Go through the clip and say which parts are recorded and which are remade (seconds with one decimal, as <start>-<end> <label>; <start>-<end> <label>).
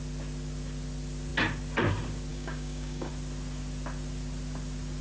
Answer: 0.0-2.3 recorded; 2.3-3.1 remade; 3.1-5.0 recorded